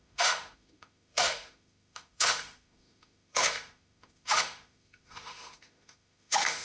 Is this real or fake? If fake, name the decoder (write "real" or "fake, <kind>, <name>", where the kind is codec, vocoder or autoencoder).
fake, autoencoder, DAC-VAE